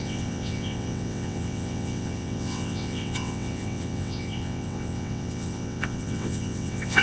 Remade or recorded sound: remade